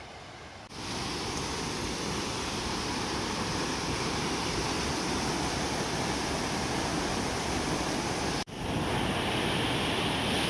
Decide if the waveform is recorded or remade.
recorded